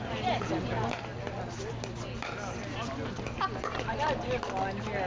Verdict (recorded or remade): recorded